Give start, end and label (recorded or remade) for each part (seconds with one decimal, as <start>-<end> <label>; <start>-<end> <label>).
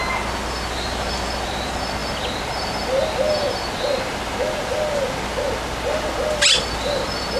0.0-7.4 recorded